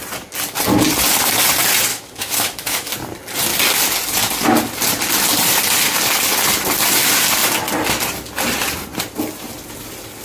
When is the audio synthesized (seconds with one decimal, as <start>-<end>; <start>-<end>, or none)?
1.9-2.9